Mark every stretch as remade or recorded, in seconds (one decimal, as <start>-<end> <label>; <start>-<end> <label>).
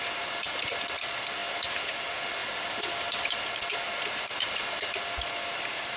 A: 0.0-6.0 recorded